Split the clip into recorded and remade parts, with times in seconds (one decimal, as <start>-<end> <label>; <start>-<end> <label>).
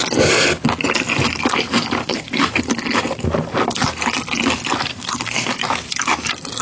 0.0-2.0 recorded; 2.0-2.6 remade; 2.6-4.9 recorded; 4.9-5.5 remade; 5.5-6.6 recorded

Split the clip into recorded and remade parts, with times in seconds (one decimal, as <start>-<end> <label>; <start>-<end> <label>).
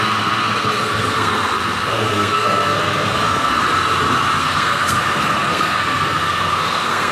0.0-3.6 remade; 3.6-4.4 recorded; 4.4-7.1 remade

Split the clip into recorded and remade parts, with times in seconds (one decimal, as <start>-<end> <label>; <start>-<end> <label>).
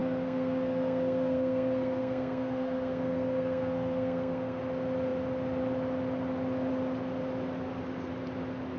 0.0-4.6 remade; 4.6-8.8 recorded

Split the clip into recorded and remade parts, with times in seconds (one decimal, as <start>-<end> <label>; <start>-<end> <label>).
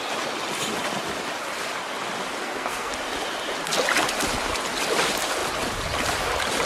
0.0-2.4 recorded; 2.4-2.9 remade; 2.9-6.7 recorded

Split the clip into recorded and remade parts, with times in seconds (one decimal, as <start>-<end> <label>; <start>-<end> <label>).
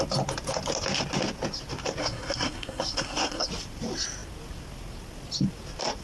0.0-2.0 recorded; 2.0-3.5 remade; 3.5-6.0 recorded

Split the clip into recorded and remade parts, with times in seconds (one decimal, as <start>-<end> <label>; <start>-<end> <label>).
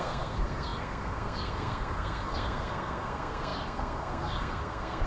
0.0-5.1 remade